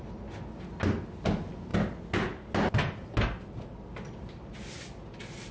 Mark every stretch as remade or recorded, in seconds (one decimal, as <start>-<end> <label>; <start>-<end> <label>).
0.0-5.5 recorded